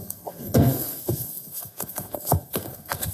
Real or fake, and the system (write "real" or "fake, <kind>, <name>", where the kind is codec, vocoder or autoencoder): fake, codec, SNAC